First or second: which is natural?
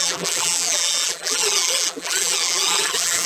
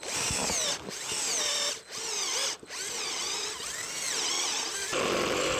second